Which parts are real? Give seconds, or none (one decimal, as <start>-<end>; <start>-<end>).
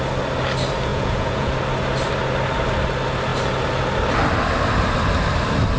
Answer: 0.0-0.9; 1.5-5.8